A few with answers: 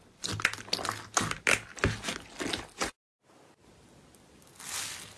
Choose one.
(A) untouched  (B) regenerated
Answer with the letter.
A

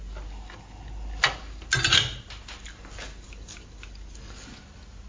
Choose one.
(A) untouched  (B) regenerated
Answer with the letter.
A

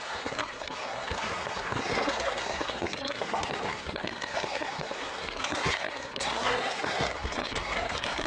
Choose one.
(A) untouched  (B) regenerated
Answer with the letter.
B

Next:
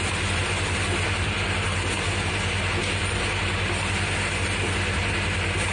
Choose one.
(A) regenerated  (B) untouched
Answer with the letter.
B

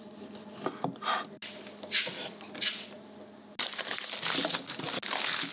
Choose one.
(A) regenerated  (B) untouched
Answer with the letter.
B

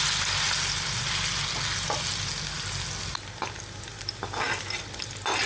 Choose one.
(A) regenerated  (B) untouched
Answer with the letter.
B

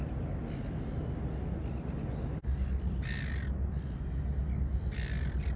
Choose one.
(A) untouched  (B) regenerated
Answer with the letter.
A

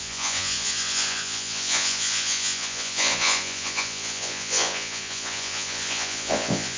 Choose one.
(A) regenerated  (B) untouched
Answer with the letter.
A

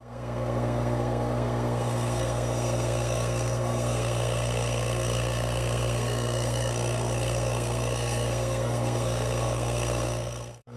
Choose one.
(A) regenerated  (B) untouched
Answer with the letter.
A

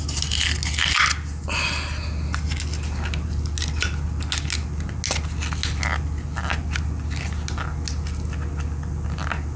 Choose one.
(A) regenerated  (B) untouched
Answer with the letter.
B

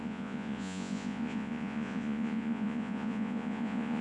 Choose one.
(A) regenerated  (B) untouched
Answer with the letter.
A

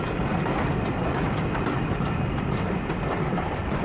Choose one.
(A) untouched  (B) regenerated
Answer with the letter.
B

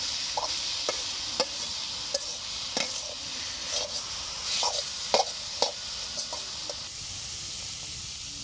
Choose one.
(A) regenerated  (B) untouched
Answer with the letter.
B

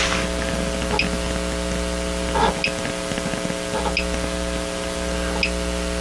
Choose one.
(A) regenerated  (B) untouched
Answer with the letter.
B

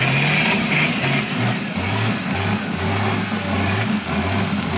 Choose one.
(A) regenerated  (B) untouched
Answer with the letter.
B